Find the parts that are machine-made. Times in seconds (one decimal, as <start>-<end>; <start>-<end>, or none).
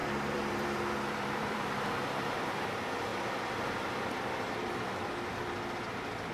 0.0-1.9